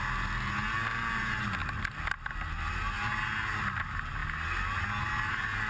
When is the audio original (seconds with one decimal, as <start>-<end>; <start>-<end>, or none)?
0.0-5.7

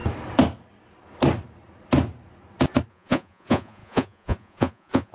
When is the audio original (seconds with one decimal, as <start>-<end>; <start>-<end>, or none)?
0.0-2.9

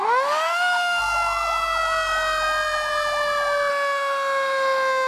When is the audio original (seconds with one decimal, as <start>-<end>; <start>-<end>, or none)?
1.0-3.7

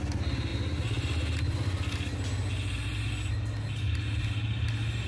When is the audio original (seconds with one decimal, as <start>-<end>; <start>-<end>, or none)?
0.0-5.1

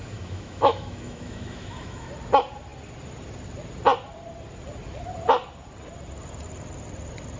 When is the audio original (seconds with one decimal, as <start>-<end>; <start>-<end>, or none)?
2.1-7.4

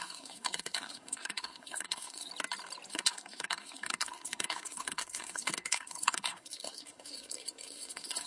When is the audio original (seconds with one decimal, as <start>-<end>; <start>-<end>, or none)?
2.3-2.9

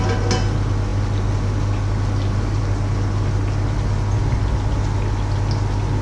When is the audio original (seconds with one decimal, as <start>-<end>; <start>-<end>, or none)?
0.0-6.0